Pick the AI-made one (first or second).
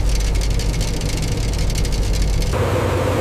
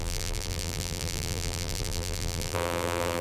second